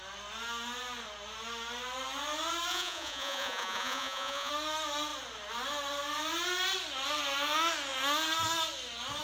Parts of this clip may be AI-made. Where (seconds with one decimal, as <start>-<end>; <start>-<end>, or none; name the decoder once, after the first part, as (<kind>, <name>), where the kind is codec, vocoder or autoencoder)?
2.7-4.5 (vocoder, Vocos)